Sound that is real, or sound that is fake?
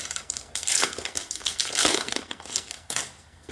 fake